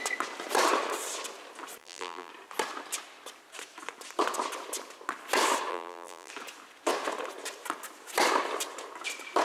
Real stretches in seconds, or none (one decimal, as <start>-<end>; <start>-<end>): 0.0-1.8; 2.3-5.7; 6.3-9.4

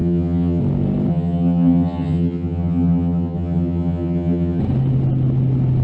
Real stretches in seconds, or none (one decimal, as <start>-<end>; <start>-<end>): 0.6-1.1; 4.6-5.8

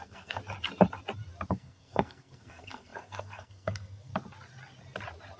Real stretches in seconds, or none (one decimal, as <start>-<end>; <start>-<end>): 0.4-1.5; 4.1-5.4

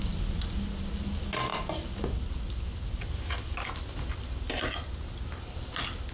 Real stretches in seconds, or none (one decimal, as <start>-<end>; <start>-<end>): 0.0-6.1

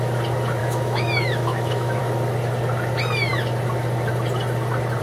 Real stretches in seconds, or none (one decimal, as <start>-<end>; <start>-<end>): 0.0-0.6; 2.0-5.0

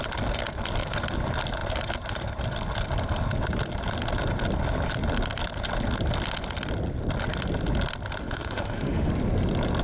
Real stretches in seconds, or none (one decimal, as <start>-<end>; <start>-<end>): 0.0-8.2; 9.1-9.8